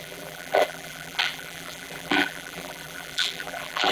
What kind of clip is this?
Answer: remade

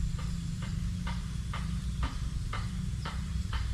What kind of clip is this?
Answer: remade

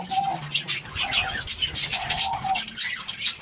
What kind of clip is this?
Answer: recorded